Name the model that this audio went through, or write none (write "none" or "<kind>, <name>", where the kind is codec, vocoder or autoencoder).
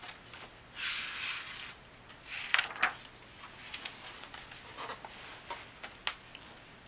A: none